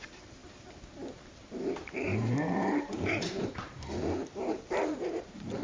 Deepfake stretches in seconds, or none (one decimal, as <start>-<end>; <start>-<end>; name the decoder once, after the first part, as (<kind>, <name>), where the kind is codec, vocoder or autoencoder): 0.0-5.6 (vocoder, BigVGAN v2)